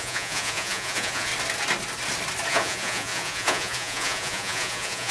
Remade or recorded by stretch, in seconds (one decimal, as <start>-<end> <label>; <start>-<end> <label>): 0.0-1.3 remade; 1.3-2.5 recorded; 2.5-5.1 remade